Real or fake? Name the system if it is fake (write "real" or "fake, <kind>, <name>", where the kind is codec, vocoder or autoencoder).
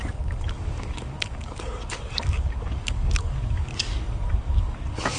fake, codec, DAC